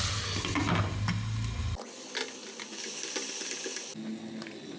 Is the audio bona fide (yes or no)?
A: yes